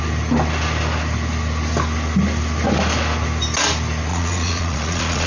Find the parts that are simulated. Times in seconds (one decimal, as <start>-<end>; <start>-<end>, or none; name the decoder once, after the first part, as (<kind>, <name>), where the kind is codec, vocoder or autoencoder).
4.1-5.3 (vocoder, Vocos)

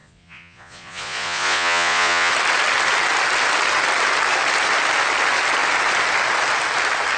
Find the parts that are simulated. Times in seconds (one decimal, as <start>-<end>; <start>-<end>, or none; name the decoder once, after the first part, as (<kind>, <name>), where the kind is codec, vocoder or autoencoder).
0.0-2.3 (vocoder, Vocos)

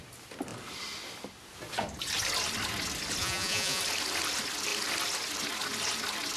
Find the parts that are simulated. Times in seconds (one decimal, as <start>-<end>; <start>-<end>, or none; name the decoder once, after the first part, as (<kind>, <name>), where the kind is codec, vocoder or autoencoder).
3.2-3.8 (vocoder, Vocos)

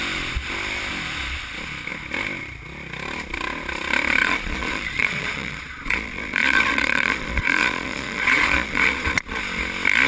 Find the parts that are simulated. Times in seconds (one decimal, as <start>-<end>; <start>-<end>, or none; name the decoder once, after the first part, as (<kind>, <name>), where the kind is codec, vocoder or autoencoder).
4.2-9.4 (vocoder, Vocos)

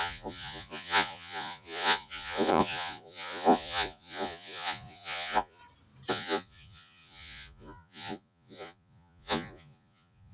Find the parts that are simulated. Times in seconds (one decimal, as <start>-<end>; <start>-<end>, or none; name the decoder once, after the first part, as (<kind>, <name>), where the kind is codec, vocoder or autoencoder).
0.0-5.6 (vocoder, Vocos); 6.1-10.3

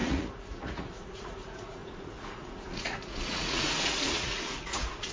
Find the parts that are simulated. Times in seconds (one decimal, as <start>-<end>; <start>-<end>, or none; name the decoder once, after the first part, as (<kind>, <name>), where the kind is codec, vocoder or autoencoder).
0.0-5.1 (vocoder, Vocos)